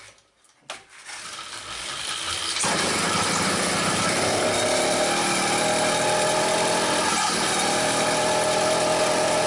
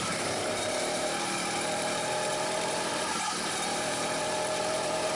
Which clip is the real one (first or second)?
first